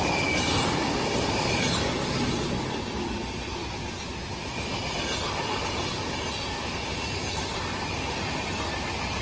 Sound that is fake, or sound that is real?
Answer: real